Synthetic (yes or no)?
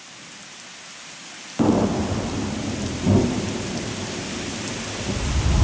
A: no